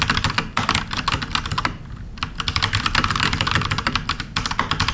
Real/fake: real